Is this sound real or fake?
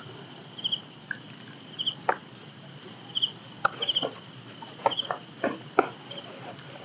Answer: real